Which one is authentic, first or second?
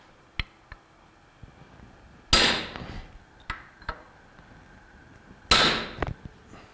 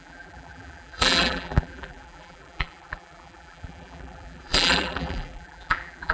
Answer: first